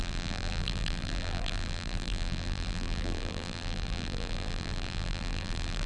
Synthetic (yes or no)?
yes